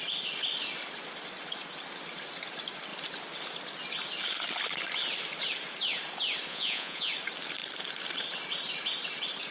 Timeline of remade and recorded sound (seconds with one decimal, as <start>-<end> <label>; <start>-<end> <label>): 0.0-6.5 recorded; 6.5-7.1 remade; 7.1-9.5 recorded

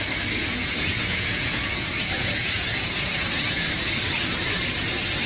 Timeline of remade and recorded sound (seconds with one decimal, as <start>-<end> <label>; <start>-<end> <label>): 0.0-0.4 recorded; 0.4-3.6 remade; 3.6-5.3 recorded